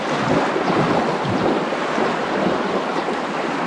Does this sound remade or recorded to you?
recorded